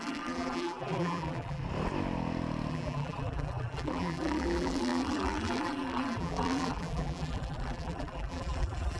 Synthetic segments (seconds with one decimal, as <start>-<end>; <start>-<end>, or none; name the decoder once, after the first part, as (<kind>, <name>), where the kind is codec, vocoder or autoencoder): 0.0-1.6 (vocoder, BigVGAN v2); 2.7-9.0